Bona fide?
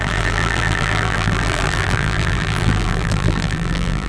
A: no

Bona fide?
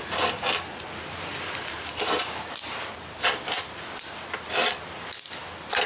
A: no